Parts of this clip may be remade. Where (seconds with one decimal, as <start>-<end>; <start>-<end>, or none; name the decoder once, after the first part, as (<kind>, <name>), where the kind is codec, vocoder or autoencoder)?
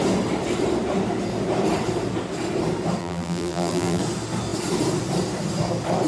3.0-4.0 (vocoder, BigVGAN v2)